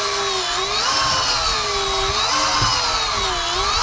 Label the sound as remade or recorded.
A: recorded